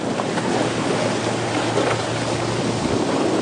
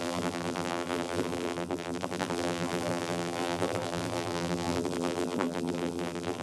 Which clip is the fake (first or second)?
second